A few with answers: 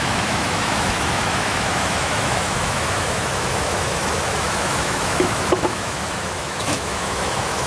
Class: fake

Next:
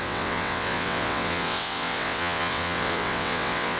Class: fake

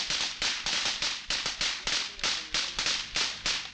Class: real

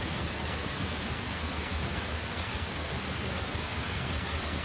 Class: fake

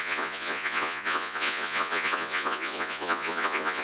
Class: fake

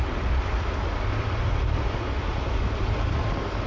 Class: real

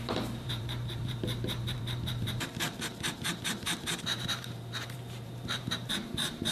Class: fake